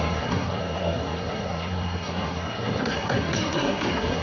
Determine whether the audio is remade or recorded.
remade